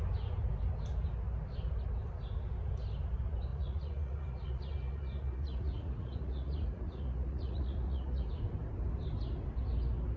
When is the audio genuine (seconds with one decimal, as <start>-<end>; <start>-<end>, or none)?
0.0-3.5; 8.3-10.2